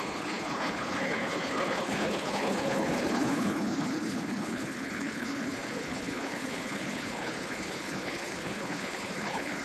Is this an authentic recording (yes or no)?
no